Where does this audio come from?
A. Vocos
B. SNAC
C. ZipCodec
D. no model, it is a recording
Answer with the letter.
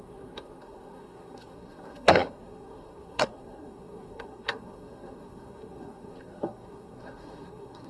B